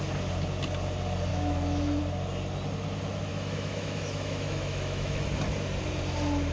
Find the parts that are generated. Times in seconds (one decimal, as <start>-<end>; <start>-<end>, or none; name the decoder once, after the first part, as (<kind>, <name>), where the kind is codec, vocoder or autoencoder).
1.3-2.0 (autoencoder, DAC-VAE); 3.3-5.2